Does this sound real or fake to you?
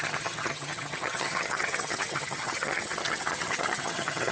fake